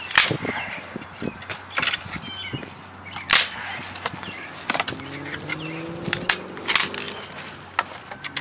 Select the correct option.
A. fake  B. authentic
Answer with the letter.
B